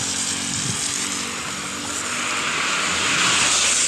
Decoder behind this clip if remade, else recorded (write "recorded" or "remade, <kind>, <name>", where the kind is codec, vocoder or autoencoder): recorded